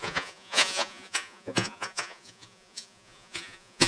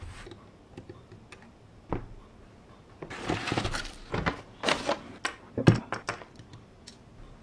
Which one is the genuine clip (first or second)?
second